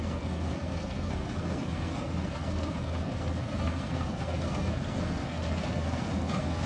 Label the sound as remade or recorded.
remade